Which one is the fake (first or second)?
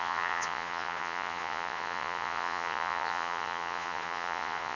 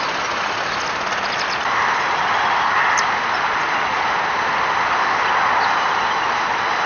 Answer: first